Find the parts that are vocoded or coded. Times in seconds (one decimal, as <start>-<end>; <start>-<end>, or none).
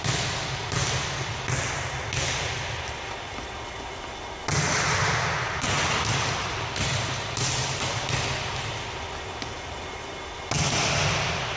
none